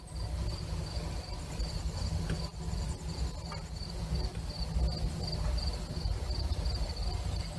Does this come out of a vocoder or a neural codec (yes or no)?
no